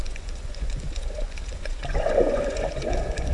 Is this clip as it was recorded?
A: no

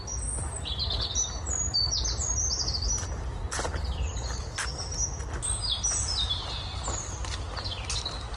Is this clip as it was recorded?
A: yes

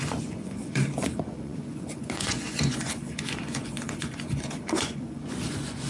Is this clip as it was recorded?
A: no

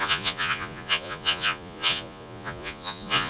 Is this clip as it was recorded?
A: no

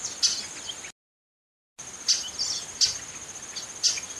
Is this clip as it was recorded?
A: yes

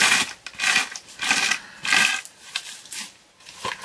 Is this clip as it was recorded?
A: yes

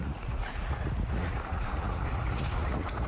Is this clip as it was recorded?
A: no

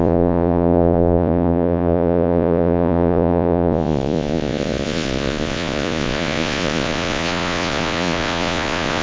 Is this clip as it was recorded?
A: no